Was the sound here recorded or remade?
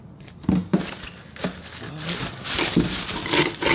recorded